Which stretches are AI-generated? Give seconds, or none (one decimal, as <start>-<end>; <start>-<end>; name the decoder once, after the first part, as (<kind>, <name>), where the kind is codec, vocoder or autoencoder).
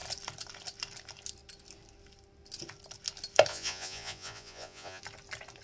3.5-5.0 (vocoder, Vocos)